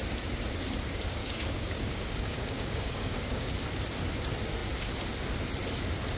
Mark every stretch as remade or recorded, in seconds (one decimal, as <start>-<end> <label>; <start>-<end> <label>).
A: 0.0-1.2 recorded; 1.2-3.5 remade; 3.5-6.2 recorded